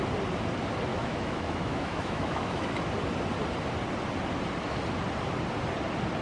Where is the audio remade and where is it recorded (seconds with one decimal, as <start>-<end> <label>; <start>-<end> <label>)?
0.0-0.9 recorded; 0.9-2.9 remade; 2.9-6.2 recorded